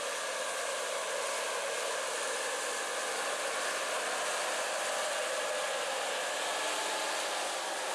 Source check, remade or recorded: recorded